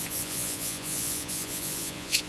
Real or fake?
fake